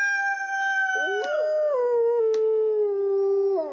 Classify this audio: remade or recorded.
recorded